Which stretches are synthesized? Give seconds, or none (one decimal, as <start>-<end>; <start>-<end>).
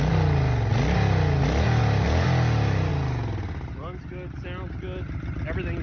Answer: none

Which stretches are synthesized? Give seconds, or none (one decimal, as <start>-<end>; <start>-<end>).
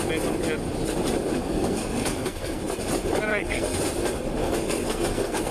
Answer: 1.4-2.6; 3.3-3.8; 4.4-5.5